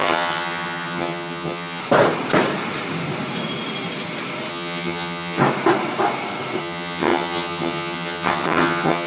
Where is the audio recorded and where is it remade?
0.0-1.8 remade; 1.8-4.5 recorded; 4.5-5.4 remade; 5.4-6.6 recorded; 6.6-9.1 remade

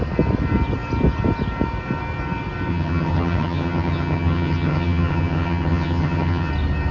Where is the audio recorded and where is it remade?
0.0-2.7 recorded; 2.7-6.5 remade; 6.5-6.9 recorded

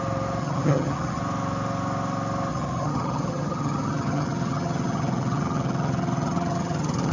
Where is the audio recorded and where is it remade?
0.0-0.4 recorded; 0.4-1.2 remade; 1.2-2.5 recorded; 2.5-7.1 remade

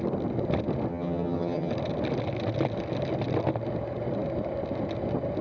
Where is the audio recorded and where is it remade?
0.0-0.9 recorded; 0.9-1.7 remade; 1.7-5.4 recorded

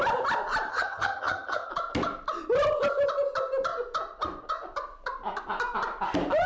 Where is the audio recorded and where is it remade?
0.0-0.7 recorded; 0.7-1.7 remade; 1.7-6.5 recorded